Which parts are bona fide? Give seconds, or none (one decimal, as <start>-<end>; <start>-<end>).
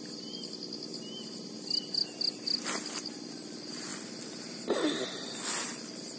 0.0-6.2